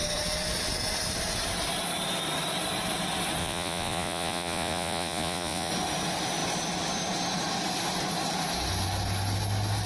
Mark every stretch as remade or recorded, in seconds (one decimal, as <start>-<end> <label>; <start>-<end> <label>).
0.0-3.4 recorded; 3.4-5.7 remade; 5.7-9.9 recorded